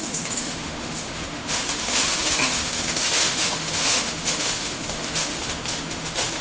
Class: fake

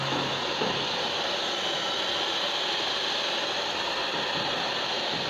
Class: real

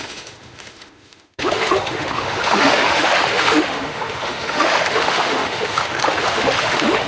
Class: fake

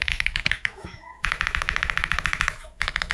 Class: fake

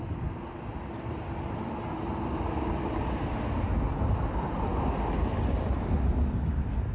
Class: real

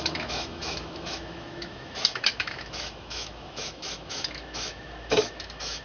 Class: fake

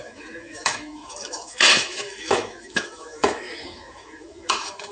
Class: fake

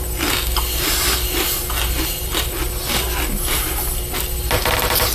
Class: real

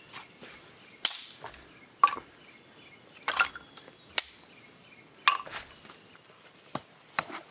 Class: real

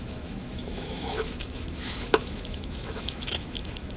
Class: fake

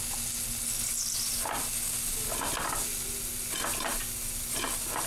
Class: real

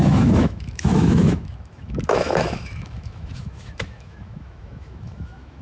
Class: fake